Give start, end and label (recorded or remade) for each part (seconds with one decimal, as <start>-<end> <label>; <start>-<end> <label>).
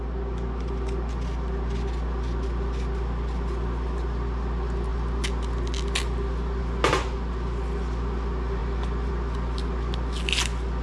0.0-10.8 recorded